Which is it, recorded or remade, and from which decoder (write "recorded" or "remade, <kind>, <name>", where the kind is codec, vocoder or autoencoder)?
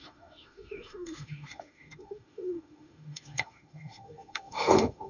remade, autoencoder, DAC-VAE